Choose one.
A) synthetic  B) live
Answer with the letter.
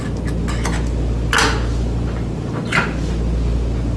B